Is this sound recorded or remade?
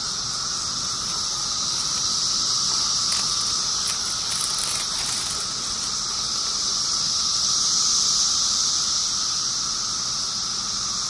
recorded